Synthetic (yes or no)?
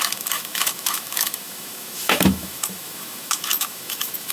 yes